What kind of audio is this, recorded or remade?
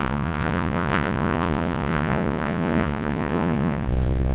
remade